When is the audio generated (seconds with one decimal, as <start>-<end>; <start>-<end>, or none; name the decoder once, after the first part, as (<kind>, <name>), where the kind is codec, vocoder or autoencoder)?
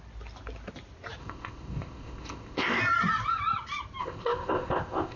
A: 1.2-2.8 (codec, ZipCodec); 4.0-5.2